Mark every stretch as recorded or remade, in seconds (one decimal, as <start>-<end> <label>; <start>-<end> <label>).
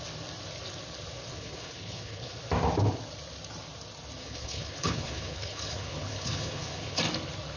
0.0-1.3 recorded; 1.3-2.4 remade; 2.4-4.2 recorded; 4.2-7.0 remade; 7.0-7.6 recorded